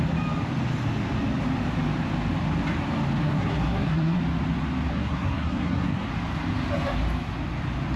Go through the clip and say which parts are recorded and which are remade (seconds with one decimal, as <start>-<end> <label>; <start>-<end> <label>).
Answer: 0.0-3.2 recorded; 3.2-4.2 remade; 4.2-4.9 recorded; 4.9-6.1 remade; 6.1-8.0 recorded